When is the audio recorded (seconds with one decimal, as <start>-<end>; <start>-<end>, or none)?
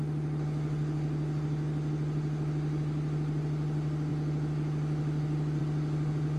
0.0-6.4